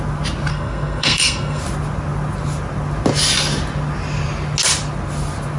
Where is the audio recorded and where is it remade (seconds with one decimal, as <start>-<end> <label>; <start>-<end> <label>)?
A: 0.0-0.5 recorded; 0.5-1.6 remade; 1.6-5.6 recorded